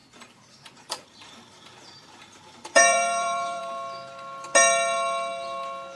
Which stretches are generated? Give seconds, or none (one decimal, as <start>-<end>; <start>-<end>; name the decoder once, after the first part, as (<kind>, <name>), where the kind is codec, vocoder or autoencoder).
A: 0.0-3.6 (vocoder, BigVGAN v2)